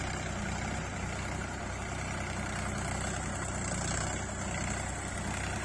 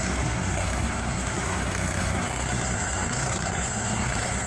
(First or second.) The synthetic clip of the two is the second